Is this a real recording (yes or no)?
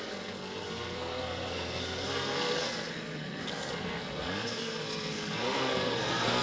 no